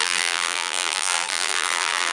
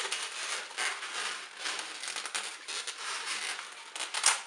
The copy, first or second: first